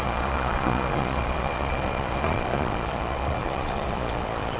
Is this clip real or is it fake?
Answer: fake